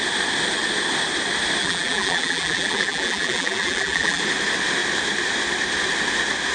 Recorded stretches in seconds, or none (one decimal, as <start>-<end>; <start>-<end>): 0.0-1.6; 4.2-6.5